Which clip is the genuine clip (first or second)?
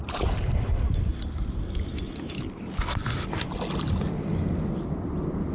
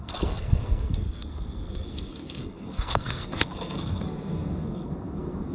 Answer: first